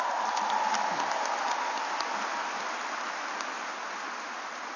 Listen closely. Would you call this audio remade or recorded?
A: recorded